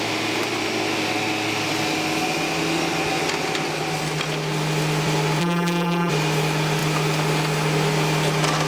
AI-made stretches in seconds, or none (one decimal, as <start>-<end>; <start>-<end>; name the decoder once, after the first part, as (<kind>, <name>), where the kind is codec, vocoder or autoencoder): 5.4-6.1 (vocoder, BigVGAN v2)